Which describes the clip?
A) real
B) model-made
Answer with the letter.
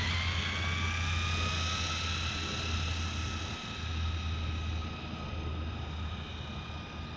A